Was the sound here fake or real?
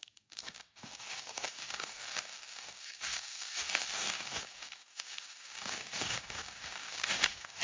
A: fake